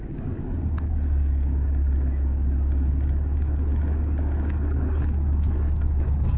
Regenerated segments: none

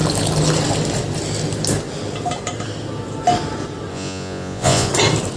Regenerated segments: 3.9-4.9

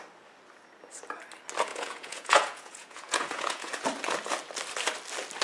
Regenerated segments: 1.7-3.7

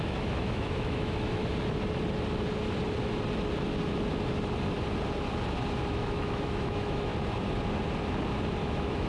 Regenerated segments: 0.0-1.4; 5.9-7.1; 8.6-9.1

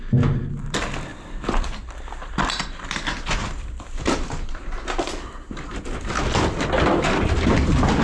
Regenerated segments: 1.1-3.8

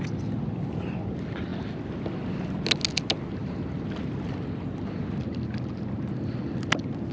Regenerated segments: none

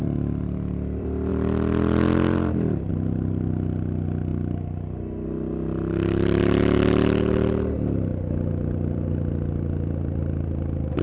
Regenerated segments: 0.0-4.3; 8.5-11.0